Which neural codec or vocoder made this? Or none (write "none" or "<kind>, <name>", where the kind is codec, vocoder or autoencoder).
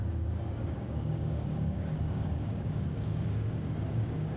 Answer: codec, DAC